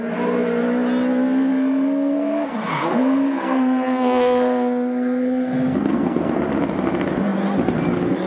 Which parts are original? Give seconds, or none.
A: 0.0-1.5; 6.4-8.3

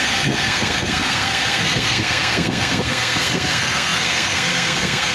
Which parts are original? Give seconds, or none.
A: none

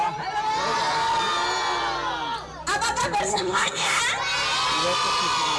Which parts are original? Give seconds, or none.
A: 0.0-3.3; 4.0-5.6

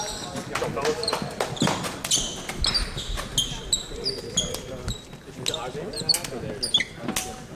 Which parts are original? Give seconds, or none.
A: 0.0-7.5

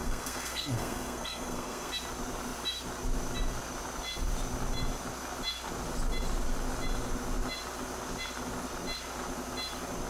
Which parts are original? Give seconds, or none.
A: 1.9-10.1

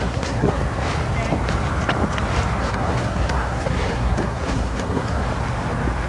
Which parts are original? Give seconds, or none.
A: 0.6-2.6; 5.3-6.1

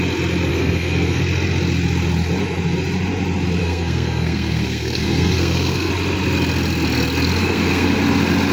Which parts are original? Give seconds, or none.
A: 0.0-0.5; 1.2-3.6; 5.9-7.4; 8.0-8.5

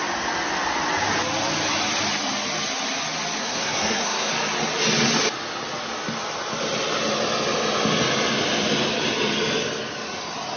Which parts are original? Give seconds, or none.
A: 0.0-3.4; 4.3-10.6